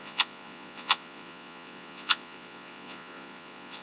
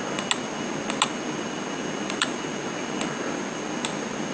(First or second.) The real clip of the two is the second